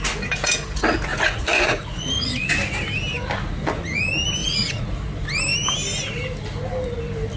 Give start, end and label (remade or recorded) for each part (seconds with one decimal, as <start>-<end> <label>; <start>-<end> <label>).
0.0-1.1 recorded; 1.1-2.5 remade; 2.5-4.4 recorded; 4.4-4.9 remade; 4.9-7.4 recorded